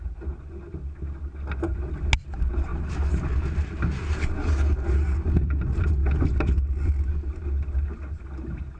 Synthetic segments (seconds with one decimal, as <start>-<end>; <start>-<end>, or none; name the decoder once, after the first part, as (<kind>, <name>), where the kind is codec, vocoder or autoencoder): none